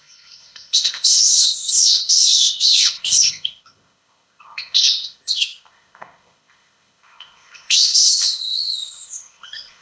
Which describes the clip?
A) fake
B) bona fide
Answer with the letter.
A